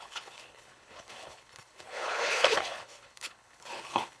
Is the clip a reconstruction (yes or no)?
yes